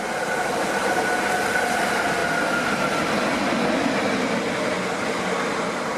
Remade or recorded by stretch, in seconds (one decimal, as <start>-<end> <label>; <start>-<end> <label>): 0.0-2.2 remade; 2.2-5.5 recorded; 5.5-6.0 remade